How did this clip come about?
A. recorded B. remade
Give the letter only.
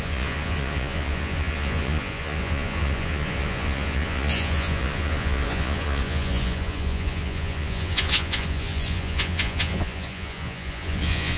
B